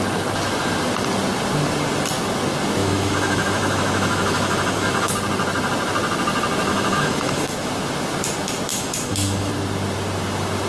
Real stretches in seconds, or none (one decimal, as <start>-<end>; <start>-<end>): 0.0-2.8; 5.1-6.7; 7.7-8.7; 9.5-10.7